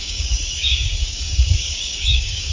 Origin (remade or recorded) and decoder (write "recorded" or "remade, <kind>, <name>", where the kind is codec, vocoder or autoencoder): remade, codec, DAC